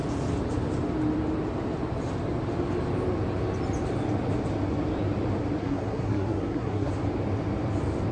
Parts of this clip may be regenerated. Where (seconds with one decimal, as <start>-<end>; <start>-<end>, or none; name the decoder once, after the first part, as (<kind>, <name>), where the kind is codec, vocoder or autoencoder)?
5.6-6.9 (codec, SNAC)